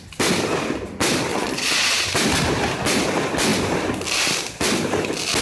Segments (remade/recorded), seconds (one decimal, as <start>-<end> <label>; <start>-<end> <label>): 0.0-1.3 recorded; 1.3-2.1 remade; 2.1-5.4 recorded